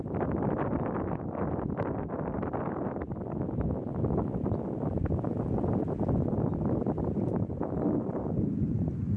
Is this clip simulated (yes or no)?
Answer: no